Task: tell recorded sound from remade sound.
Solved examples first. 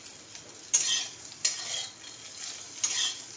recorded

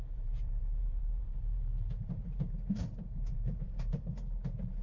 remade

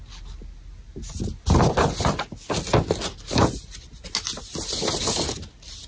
recorded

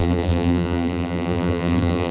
remade